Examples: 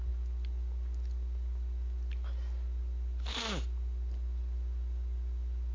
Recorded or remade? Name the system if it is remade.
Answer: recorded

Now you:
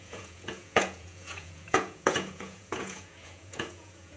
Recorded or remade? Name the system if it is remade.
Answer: remade, vocoder, Vocos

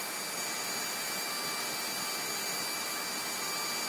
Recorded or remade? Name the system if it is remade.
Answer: recorded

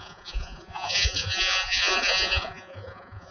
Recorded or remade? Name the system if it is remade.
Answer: remade, vocoder, Vocos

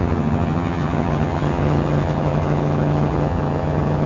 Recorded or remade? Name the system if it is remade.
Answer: remade, vocoder, HiFi-GAN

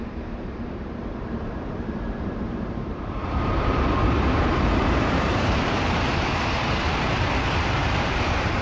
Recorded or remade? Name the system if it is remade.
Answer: remade, vocoder, BigVGAN v2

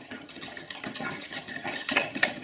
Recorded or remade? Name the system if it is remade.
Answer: remade, vocoder, HiFi-GAN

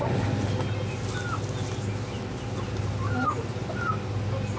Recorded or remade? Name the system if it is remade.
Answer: recorded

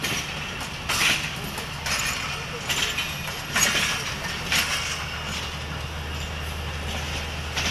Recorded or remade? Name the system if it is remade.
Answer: recorded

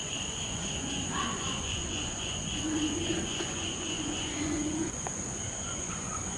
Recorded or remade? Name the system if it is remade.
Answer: remade, vocoder, Vocos